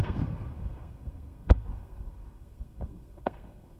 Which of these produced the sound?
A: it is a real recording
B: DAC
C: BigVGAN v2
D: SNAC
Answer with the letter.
D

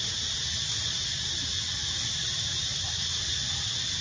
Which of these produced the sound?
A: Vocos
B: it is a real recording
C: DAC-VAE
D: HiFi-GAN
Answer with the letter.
B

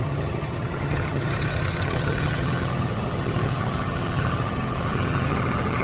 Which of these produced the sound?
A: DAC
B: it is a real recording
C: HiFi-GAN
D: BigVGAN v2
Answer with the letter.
C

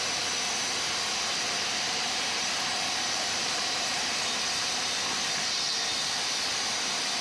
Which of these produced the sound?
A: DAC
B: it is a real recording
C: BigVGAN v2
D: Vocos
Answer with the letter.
B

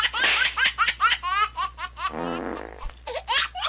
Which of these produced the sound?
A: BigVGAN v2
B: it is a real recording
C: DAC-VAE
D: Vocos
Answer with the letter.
B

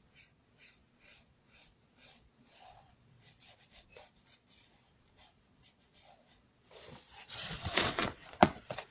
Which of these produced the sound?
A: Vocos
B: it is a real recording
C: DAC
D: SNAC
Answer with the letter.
A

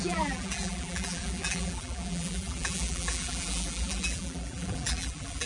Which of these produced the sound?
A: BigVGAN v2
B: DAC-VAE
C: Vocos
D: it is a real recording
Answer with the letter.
A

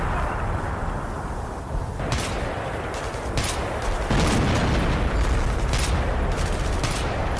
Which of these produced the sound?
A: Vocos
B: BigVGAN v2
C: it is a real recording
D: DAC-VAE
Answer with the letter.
C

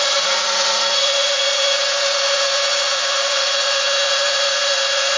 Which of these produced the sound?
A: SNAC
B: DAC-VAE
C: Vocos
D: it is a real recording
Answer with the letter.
C